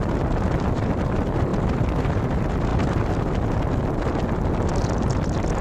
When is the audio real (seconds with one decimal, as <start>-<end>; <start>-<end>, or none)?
0.0-5.6